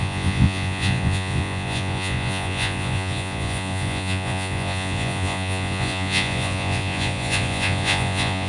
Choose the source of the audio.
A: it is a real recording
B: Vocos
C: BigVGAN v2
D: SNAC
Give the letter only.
B